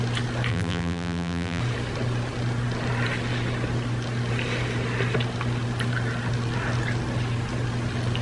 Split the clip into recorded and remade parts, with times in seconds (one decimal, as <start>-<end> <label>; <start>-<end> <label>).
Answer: 0.0-0.5 recorded; 0.5-1.6 remade; 1.6-8.2 recorded